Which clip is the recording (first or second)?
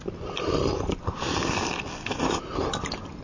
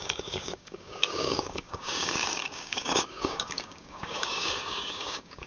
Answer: first